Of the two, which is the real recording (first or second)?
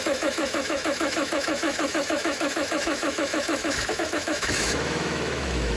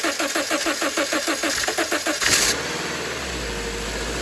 second